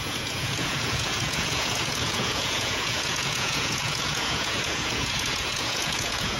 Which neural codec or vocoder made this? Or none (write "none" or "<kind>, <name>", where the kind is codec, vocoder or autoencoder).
vocoder, Vocos